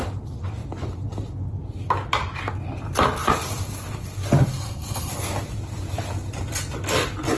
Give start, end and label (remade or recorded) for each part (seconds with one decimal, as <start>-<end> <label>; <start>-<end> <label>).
0.0-4.5 recorded; 4.5-5.1 remade; 5.1-7.4 recorded